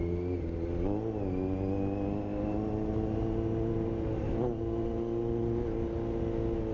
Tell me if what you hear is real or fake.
real